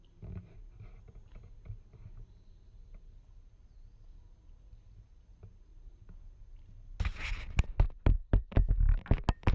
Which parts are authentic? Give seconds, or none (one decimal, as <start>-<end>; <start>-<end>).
0.0-8.2; 8.7-9.5